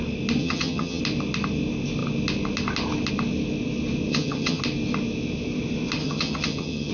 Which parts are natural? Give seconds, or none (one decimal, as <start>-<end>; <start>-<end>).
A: 0.0-0.4; 1.0-4.1; 4.6-6.0

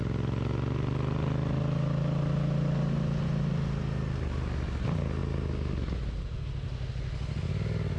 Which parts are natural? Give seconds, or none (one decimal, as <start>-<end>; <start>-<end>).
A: 0.0-8.0

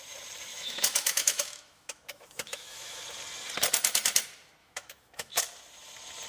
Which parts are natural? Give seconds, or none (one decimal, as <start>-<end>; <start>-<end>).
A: 0.0-0.5; 3.0-4.6; 5.4-6.3